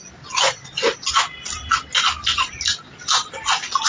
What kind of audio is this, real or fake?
real